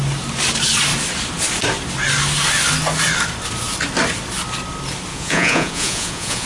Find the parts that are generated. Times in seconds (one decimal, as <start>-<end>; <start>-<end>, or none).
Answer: 5.1-6.5